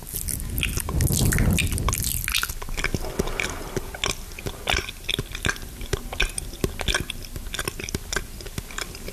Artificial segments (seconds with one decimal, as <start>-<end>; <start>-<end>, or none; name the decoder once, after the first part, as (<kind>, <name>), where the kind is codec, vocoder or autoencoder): none